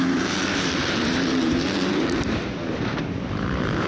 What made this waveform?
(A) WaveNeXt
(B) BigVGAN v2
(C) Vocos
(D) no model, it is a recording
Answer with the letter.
B